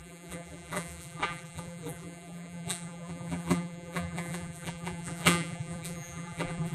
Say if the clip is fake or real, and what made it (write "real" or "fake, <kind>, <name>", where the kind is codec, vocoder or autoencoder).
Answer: fake, vocoder, BigVGAN v2